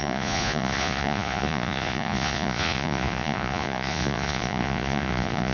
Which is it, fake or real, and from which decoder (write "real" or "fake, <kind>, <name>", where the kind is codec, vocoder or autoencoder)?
fake, vocoder, Vocos